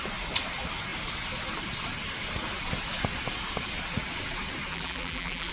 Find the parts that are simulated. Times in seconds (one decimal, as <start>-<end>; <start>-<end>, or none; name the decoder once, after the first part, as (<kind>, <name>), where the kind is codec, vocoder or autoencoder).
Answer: 4.7-5.5 (vocoder, BigVGAN v2)